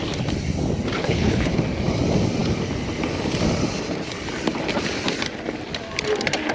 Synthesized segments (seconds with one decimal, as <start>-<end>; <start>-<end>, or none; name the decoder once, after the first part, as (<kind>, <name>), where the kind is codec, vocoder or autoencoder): 1.0-1.6 (codec, HILCodec)